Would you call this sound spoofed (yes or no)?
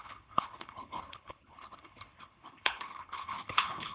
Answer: yes